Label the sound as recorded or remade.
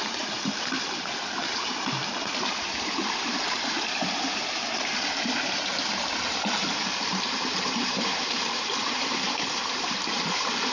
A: remade